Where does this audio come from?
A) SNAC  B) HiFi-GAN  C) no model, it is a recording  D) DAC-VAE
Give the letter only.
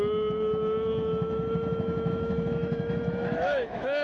D